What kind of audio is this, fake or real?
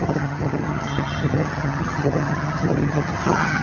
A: fake